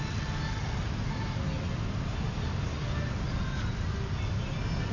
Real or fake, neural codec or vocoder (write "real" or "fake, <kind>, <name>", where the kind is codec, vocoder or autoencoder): real